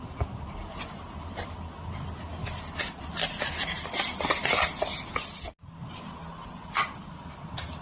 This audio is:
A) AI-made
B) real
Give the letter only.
B